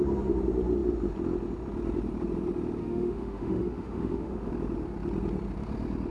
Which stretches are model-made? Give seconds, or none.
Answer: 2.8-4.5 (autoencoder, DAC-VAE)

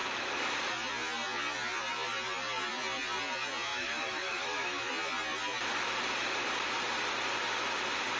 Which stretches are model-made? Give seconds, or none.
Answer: 0.0-0.7 (autoencoder, DAC-VAE); 3.7-4.9

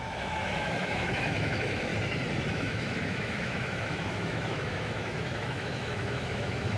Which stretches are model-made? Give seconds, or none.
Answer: 0.0-1.9 (autoencoder, DAC-VAE); 2.5-6.8

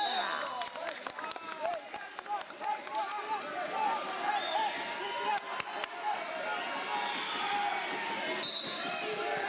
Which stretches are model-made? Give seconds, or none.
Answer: none

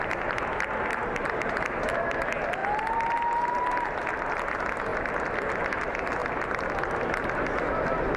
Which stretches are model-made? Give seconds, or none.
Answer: none

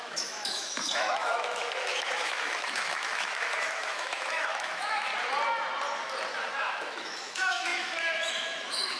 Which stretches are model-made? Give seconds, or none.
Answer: 0.0-5.1 (autoencoder, DAC-VAE); 6.5-9.0

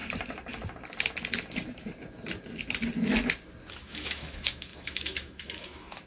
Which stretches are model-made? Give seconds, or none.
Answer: 3.7-6.1 (autoencoder, DAC-VAE)

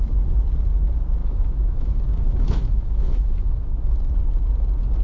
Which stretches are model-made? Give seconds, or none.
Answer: 1.2-4.2 (autoencoder, DAC-VAE)